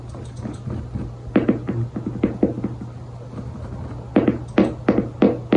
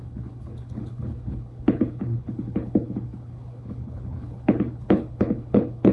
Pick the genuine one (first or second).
first